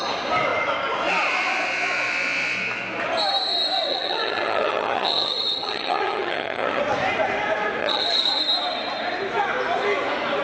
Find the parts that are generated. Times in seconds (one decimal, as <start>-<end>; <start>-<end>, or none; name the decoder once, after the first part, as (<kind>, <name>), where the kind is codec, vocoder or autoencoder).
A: 3.9-6.8 (vocoder, HiFi-GAN); 7.8-8.4